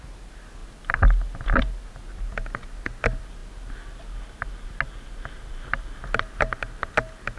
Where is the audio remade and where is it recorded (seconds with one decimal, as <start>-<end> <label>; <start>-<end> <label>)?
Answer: 0.0-7.4 recorded